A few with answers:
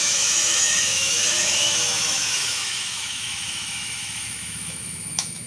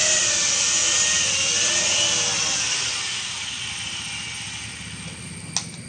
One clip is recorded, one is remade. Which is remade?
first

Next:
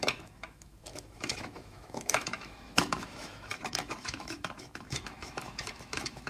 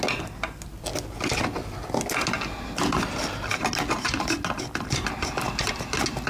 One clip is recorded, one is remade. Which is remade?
first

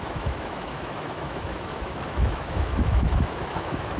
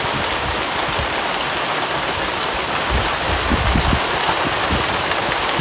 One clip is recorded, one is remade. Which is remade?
first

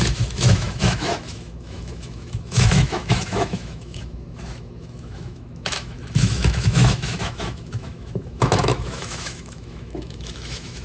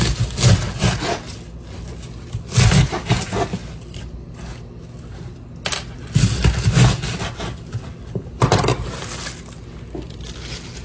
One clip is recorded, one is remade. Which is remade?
first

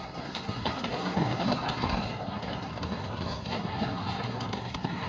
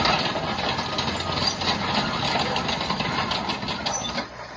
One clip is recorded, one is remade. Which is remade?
first